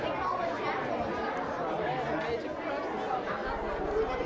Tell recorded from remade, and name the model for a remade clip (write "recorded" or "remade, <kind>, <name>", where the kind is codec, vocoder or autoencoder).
recorded